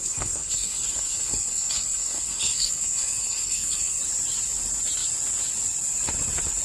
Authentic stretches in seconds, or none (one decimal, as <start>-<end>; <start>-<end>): 4.0-6.6